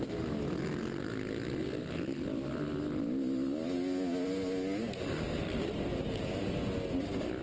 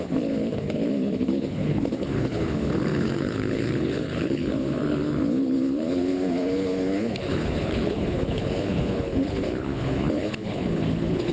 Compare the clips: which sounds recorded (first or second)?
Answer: first